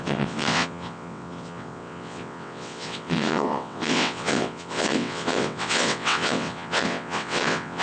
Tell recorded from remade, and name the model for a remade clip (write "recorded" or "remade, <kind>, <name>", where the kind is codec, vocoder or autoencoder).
remade, vocoder, WaveNeXt